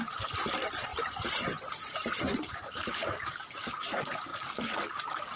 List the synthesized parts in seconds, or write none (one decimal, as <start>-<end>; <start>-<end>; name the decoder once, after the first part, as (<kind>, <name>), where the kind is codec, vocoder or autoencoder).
0.9-2.2 (vocoder, BigVGAN v2)